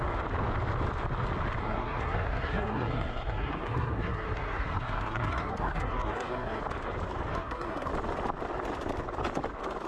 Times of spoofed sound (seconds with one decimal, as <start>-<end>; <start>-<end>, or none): 1.6-6.6; 7.3-7.9